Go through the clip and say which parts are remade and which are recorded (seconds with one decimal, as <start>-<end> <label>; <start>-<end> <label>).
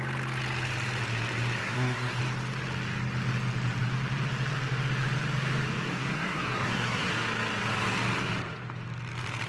0.0-1.6 recorded; 1.6-2.2 remade; 2.2-5.9 recorded; 5.9-7.1 remade; 7.1-9.5 recorded